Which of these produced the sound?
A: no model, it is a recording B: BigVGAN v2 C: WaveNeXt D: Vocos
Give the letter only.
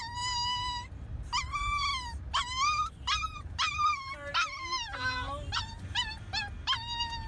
A